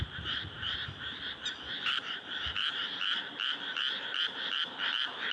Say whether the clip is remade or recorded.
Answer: remade